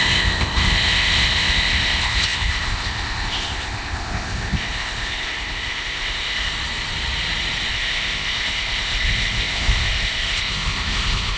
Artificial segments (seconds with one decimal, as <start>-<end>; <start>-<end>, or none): 0.0-6.5; 7.7-11.4